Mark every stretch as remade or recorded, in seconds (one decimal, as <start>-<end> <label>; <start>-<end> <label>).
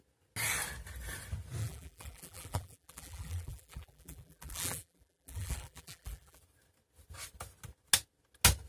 0.0-1.6 recorded; 1.6-6.4 remade; 6.4-8.7 recorded